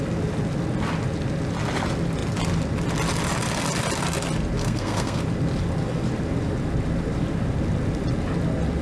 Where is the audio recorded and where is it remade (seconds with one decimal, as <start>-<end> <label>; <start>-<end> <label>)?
0.0-4.6 recorded; 4.6-5.2 remade; 5.2-8.8 recorded